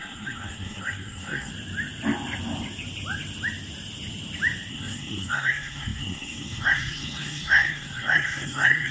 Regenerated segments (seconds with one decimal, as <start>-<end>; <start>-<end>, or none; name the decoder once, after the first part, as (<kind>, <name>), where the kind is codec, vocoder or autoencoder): 0.0-1.5 (codec, SNAC); 4.7-8.9